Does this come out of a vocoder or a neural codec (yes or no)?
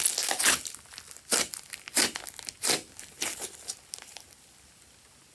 no